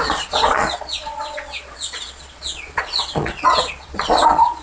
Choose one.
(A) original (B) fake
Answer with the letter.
B